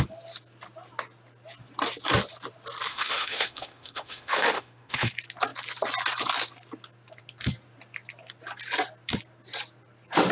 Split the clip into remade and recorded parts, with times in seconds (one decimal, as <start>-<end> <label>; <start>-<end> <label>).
0.0-2.9 recorded; 2.9-5.1 remade; 5.1-10.3 recorded